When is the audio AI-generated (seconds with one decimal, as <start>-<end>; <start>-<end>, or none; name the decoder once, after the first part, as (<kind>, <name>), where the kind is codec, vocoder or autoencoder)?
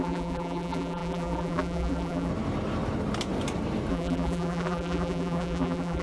0.0-2.3 (vocoder, BigVGAN v2); 3.9-6.0